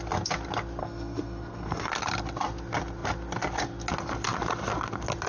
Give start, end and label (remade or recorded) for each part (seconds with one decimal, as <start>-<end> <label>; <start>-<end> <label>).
0.0-0.8 recorded; 0.8-1.8 remade; 1.8-5.3 recorded